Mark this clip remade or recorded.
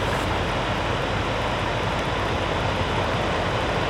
recorded